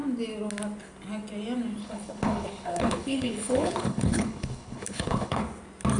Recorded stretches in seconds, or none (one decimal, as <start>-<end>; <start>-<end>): 0.0-1.8; 5.4-6.0